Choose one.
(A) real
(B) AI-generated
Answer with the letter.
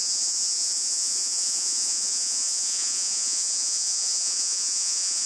B